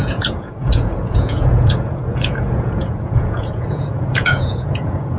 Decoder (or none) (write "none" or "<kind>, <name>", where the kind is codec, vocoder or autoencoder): vocoder, Vocos